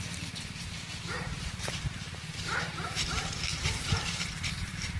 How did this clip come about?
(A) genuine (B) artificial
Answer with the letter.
B